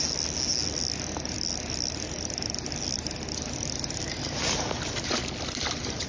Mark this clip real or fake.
real